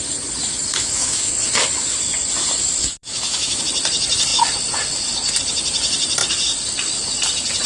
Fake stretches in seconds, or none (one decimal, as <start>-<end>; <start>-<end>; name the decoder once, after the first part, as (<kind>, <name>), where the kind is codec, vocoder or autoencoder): 0.7-1.3 (autoencoder, DAC-VAE); 2.8-3.6